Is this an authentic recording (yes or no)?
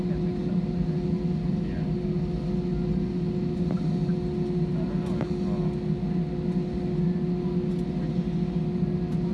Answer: yes